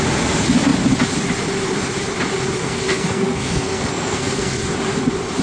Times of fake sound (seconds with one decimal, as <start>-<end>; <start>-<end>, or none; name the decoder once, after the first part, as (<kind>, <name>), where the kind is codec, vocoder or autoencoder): 2.6-4.6 (codec, SNAC)